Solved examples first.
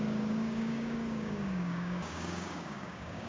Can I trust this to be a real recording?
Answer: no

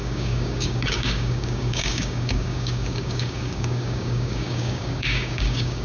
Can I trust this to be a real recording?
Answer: no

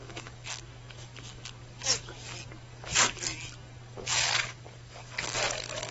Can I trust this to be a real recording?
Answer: no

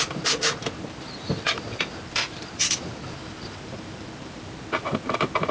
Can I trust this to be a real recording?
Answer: yes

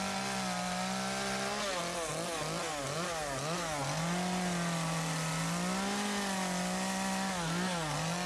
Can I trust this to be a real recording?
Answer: yes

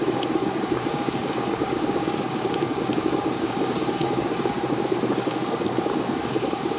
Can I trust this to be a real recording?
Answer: no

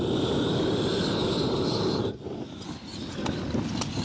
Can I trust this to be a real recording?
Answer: yes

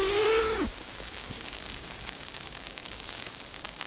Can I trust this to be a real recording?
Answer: no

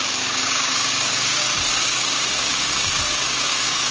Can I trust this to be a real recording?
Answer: no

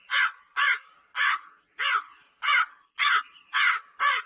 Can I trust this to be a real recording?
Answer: yes